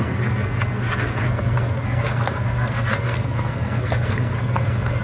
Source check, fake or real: fake